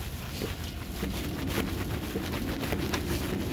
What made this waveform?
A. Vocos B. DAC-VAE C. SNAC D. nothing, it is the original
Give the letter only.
D